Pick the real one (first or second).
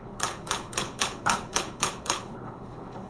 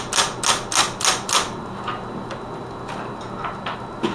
second